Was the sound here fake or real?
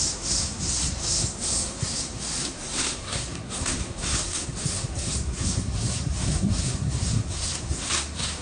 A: fake